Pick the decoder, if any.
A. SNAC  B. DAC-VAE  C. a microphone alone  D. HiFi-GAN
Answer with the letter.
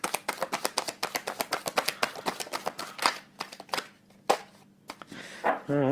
C